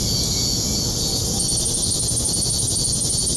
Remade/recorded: recorded